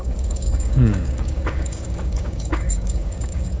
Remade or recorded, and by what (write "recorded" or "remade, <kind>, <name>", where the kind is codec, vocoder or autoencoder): remade, codec, DAC